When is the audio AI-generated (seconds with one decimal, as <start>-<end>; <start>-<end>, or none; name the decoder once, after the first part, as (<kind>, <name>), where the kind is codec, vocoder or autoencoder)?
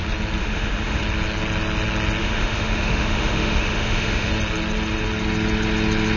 0.4-1.0 (autoencoder, DAC-VAE); 2.2-4.3